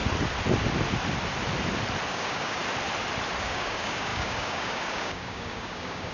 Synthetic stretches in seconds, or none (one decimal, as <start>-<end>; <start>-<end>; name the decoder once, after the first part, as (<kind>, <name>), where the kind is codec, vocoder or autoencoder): 2.1-2.6 (codec, DAC); 3.4-6.1